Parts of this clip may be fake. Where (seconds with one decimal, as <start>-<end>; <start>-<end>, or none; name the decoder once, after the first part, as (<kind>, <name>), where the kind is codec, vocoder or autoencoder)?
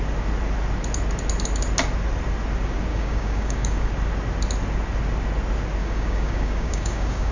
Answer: 2.9-3.9 (codec, DAC); 5.8-7.3